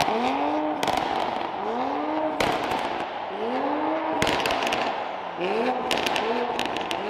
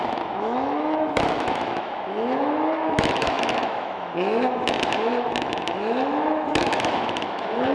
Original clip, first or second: first